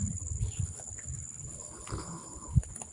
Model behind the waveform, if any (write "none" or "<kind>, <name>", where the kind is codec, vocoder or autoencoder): codec, HILCodec